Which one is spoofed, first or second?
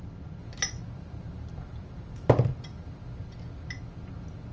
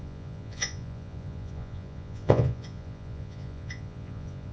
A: second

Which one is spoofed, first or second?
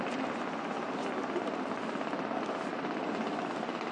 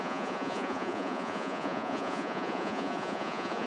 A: second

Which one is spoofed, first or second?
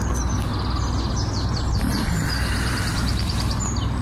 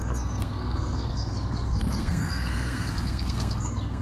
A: second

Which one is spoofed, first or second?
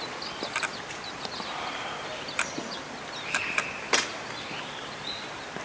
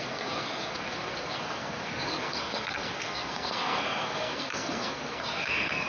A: second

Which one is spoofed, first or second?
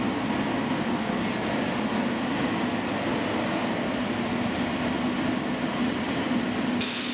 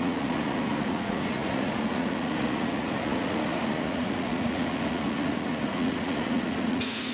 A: second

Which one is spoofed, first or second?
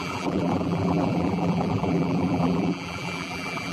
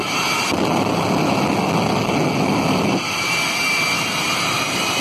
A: first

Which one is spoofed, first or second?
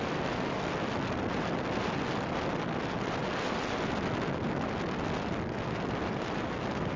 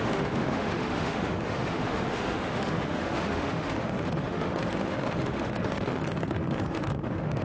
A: second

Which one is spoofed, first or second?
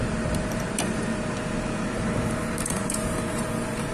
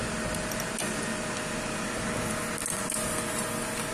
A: first